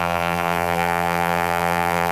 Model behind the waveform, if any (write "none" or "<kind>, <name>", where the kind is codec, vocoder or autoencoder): vocoder, BigVGAN v2